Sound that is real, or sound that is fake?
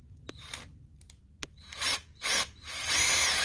real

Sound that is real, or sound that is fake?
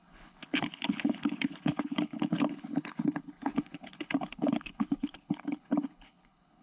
fake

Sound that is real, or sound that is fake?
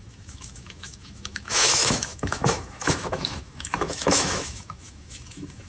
fake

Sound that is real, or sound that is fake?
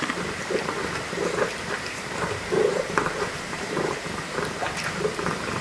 fake